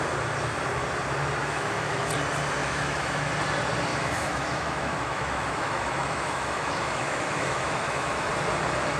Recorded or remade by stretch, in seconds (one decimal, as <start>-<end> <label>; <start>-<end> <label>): 0.0-1.4 recorded; 1.4-2.1 remade; 2.1-2.6 recorded; 2.6-3.3 remade; 3.3-3.9 recorded; 3.9-8.3 remade; 8.3-9.0 recorded